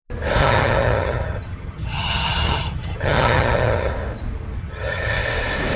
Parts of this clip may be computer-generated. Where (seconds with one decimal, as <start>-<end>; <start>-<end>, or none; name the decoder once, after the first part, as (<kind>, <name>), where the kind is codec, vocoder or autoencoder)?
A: 0.4-3.9 (vocoder, HiFi-GAN); 4.6-5.2